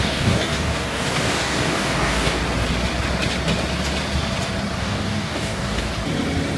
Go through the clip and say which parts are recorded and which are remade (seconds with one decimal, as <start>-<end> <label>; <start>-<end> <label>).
0.0-2.4 remade; 2.4-4.8 recorded; 4.8-5.9 remade; 5.9-6.6 recorded